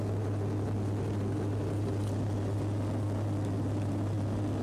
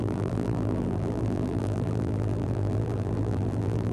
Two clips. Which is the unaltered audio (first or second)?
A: first